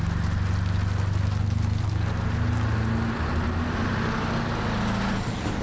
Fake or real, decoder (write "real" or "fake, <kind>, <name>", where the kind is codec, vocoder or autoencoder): real